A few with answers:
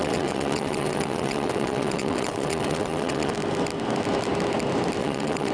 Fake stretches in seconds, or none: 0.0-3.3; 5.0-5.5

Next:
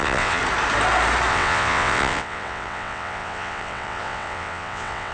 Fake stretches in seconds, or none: 0.0-0.4; 1.3-5.1

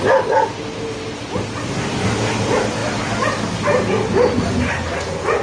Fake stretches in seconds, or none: none

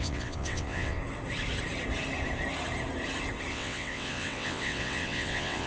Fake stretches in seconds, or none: 0.0-1.0; 3.5-5.7